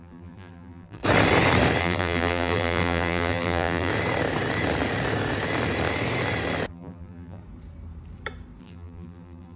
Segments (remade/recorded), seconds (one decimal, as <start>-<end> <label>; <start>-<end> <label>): 0.0-1.0 remade; 1.0-1.8 recorded; 1.8-3.9 remade; 3.9-6.7 recorded; 6.7-7.4 remade; 7.4-8.6 recorded; 8.6-9.6 remade